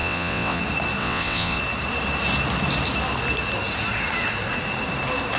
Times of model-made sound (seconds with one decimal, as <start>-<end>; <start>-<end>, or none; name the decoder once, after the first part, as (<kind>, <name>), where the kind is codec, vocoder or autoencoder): 0.0-0.6 (vocoder, WaveNeXt); 1.0-1.6